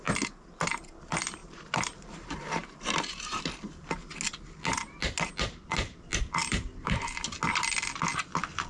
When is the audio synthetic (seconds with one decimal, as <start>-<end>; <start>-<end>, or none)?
1.4-3.4; 6.4-7.0